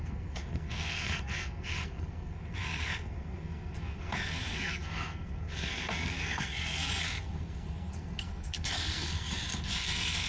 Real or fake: fake